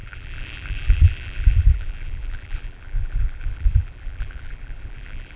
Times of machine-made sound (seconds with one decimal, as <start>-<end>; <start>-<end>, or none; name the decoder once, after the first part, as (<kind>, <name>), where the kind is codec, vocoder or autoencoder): 0.0-5.4 (vocoder, BigVGAN v2)